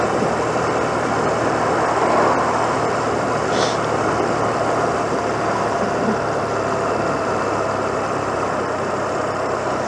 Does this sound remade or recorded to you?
recorded